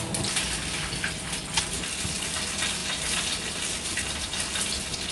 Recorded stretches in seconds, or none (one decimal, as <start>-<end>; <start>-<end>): 0.0-5.1

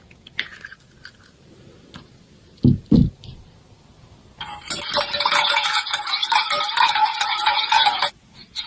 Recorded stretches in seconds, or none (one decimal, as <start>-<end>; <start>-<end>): 0.5-5.0; 6.2-6.9